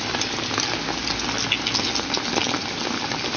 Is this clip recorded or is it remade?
recorded